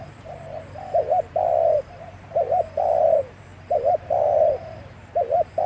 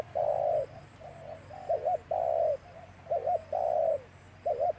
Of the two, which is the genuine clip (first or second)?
second